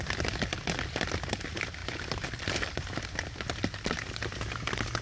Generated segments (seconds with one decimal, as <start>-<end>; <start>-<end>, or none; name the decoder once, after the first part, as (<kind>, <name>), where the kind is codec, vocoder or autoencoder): 1.8-3.0 (vocoder, BigVGAN v2)